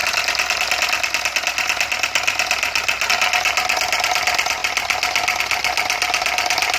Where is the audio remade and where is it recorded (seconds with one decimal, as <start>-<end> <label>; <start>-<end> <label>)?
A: 0.0-6.8 recorded